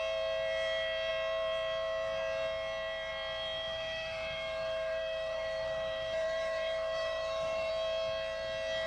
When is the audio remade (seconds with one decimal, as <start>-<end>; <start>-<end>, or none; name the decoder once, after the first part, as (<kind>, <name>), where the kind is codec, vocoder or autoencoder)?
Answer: 3.7-7.7 (autoencoder, DAC-VAE)